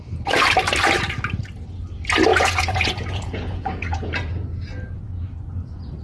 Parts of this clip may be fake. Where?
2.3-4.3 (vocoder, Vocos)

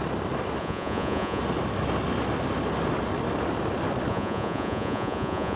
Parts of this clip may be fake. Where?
0.6-1.4 (vocoder, Vocos); 4.1-5.6

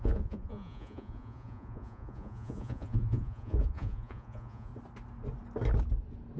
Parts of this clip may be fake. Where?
0.0-4.7 (vocoder, Vocos)

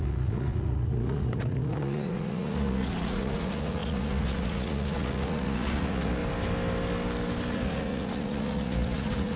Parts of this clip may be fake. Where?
0.0-6.2 (vocoder, Vocos); 7.5-9.4

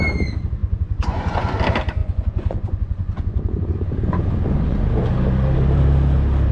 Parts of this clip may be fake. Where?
0.6-1.6 (vocoder, Vocos); 2.0-4.9

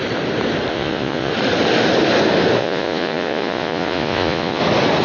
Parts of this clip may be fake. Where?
0.7-1.3 (vocoder, Vocos); 2.6-4.6

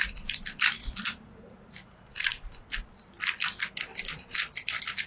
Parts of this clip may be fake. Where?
none